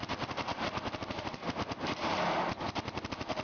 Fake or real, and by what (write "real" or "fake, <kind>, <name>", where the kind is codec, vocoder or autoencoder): real